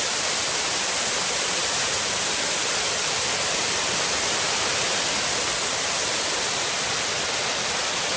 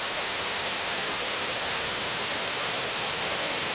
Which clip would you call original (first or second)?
first